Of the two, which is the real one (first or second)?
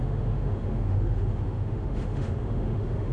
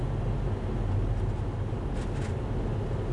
second